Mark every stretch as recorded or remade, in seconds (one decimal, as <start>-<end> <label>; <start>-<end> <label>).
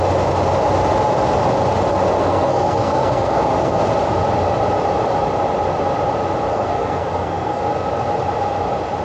0.0-2.2 recorded; 2.2-3.8 remade; 3.8-6.5 recorded; 6.5-7.6 remade; 7.6-9.0 recorded